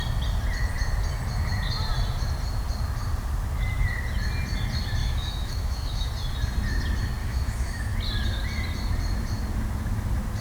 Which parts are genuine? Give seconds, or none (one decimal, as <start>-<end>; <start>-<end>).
0.0-5.0; 6.1-7.2; 8.0-10.4